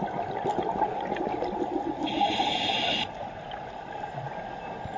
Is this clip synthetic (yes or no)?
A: no